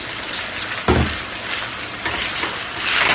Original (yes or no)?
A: yes